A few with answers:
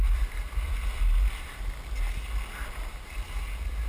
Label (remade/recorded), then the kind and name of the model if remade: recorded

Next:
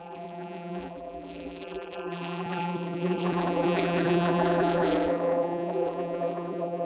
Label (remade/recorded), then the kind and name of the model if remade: remade, vocoder, BigVGAN v2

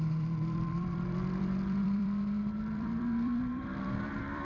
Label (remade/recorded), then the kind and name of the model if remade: remade, vocoder, BigVGAN v2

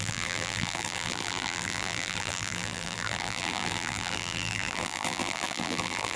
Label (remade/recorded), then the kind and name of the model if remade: remade, vocoder, BigVGAN v2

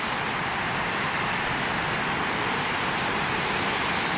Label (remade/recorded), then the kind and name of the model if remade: recorded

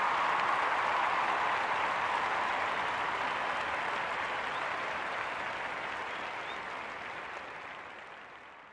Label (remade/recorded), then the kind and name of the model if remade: remade, vocoder, BigVGAN v2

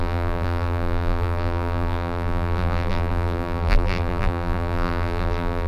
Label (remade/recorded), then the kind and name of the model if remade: remade, vocoder, BigVGAN v2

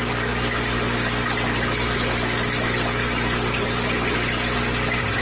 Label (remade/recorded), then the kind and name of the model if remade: recorded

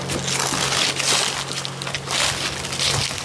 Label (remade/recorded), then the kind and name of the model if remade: recorded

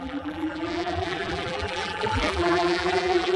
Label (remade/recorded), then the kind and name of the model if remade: remade, vocoder, BigVGAN v2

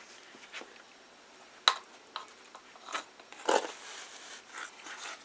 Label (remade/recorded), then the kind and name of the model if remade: recorded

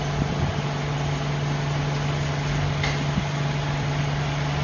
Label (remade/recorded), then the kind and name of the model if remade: recorded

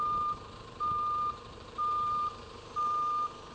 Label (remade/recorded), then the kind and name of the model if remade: remade, vocoder, BigVGAN v2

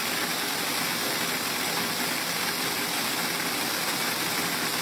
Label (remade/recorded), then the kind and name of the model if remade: recorded